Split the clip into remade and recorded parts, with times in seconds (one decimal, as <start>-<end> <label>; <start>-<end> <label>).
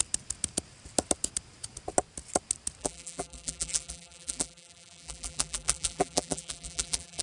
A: 0.0-2.8 recorded; 2.8-7.2 remade